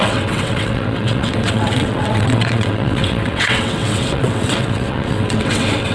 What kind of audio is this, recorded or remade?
remade